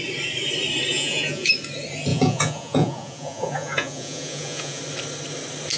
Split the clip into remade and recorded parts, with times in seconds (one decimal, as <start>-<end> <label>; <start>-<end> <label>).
0.0-0.9 recorded; 0.9-1.5 remade; 1.5-2.1 recorded; 2.1-4.8 remade; 4.8-5.8 recorded